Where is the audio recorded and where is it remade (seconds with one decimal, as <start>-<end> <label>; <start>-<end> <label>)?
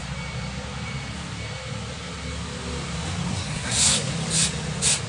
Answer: 0.0-3.3 recorded; 3.3-4.1 remade; 4.1-5.1 recorded